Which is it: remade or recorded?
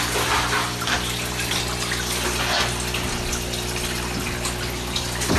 recorded